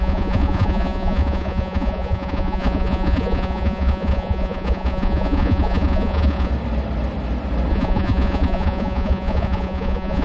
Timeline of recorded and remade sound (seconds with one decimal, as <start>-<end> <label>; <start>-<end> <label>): 0.0-6.5 remade; 6.5-7.7 recorded; 7.7-10.2 remade